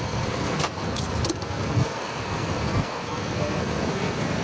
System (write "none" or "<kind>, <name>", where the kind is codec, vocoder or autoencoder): codec, SNAC